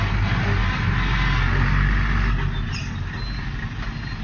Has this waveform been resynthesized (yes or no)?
no